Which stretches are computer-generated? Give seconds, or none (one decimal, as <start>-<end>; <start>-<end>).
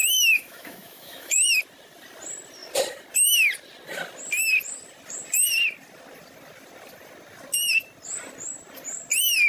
0.0-1.6